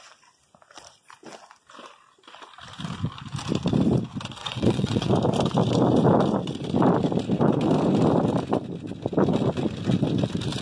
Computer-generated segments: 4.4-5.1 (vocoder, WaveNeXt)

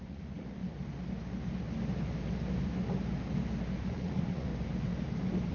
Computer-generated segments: 0.0-0.6 (vocoder, Vocos); 3.9-4.5

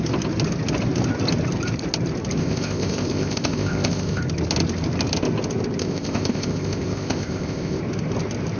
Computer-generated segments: 2.4-4.2 (codec, ZipCodec); 5.8-7.8

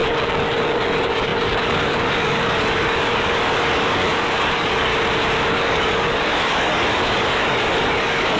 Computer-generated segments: 0.0-4.9 (codec, DAC); 5.5-8.4

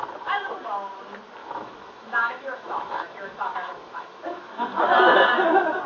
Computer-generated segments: 1.4-4.8 (autoencoder, DAC-VAE)

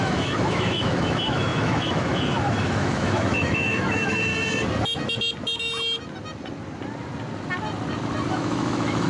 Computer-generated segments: 0.0-4.3 (autoencoder, DAC-VAE); 8.3-9.1

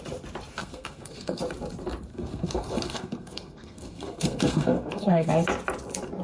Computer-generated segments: 0.6-1.4 (codec, SNAC); 2.1-5.3

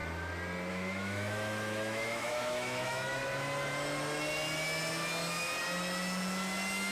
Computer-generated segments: 0.7-3.2 (autoencoder, DAC-VAE)